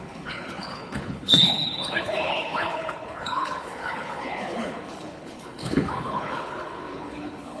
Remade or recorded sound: remade